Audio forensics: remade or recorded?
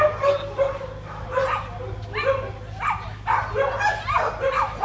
recorded